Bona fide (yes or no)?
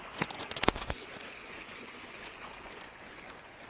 no